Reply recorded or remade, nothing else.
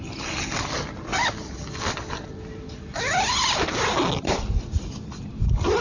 recorded